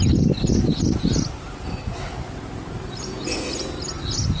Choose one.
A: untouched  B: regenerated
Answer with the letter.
A